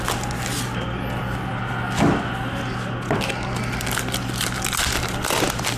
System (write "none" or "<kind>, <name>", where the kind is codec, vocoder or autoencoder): none